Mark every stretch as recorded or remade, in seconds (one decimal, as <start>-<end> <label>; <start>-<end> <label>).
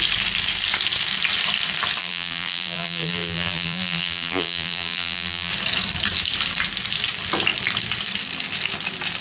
0.0-2.0 recorded; 2.0-5.5 remade; 5.5-9.2 recorded